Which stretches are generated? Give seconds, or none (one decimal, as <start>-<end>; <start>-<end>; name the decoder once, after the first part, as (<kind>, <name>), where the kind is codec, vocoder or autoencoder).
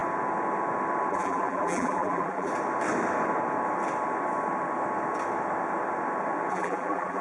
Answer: 1.1-2.5 (vocoder, BigVGAN v2); 6.5-7.2